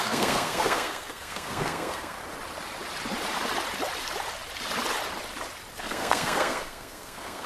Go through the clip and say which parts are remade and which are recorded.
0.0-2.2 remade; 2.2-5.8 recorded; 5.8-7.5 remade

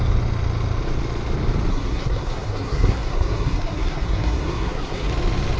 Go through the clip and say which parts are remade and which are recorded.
0.0-1.7 recorded; 1.7-5.1 remade; 5.1-5.6 recorded